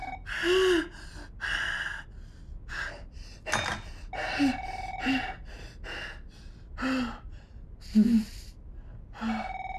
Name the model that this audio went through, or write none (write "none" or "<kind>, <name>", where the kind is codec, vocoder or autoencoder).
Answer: none